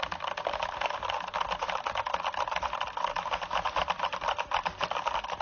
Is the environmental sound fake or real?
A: real